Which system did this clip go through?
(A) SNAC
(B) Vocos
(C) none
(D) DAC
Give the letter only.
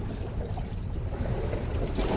C